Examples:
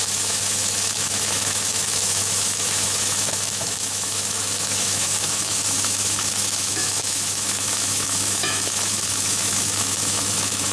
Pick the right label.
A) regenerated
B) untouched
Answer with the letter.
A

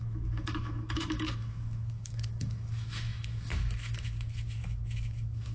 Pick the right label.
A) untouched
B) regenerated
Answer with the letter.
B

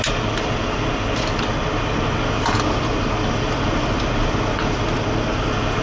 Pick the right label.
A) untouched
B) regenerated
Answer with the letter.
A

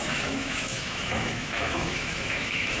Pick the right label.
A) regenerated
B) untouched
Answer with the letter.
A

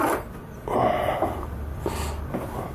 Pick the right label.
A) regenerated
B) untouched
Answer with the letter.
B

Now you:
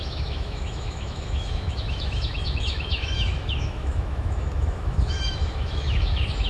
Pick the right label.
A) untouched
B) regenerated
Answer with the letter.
B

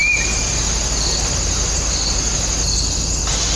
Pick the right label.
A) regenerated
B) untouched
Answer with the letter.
B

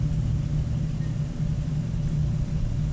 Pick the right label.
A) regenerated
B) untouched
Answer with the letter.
B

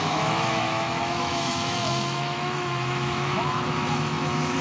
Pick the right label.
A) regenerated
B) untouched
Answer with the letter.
A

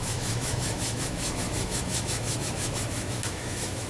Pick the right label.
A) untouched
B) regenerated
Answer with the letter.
B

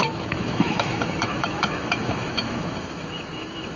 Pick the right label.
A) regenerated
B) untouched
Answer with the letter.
A